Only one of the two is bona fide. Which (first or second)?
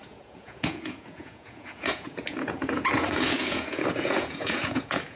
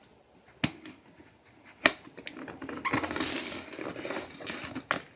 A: second